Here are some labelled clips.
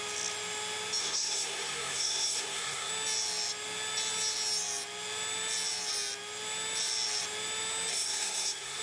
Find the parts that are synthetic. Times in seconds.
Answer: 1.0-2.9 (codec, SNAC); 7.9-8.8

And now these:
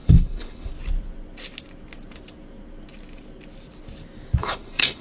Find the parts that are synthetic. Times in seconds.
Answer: 0.0-0.7 (codec, HILCodec); 4.4-5.0

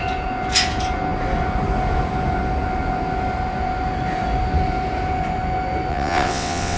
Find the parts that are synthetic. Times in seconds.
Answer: 5.9-6.8 (vocoder, WaveNeXt)

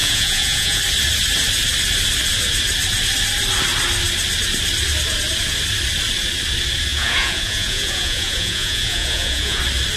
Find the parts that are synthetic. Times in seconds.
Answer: 0.0-0.8 (vocoder, Vocos); 6.9-9.6

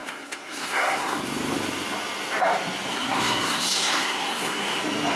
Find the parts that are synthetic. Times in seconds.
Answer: 0.0-1.2 (codec, SNAC); 2.9-4.8

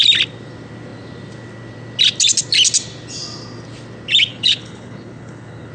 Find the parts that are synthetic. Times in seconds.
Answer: 4.3-5.7 (codec, HILCodec)

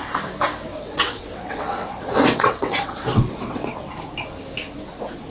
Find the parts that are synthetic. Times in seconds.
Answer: 0.7-3.9 (vocoder, WaveNeXt)

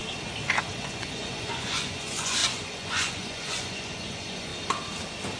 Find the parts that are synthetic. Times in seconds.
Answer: 0.7-4.5 (vocoder, Vocos)